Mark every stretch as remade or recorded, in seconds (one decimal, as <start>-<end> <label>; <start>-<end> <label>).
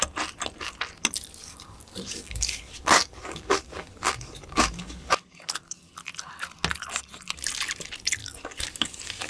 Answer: 0.0-1.4 recorded; 1.4-5.9 remade; 5.9-8.2 recorded; 8.2-9.3 remade